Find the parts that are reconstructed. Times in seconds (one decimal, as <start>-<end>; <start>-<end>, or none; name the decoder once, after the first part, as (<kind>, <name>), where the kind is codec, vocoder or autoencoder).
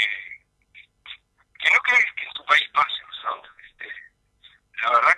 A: 3.2-3.8 (vocoder, Vocos)